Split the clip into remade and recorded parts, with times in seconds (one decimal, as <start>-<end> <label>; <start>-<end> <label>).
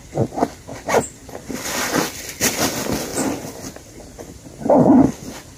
0.0-5.6 recorded